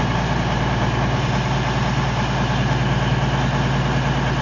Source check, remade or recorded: recorded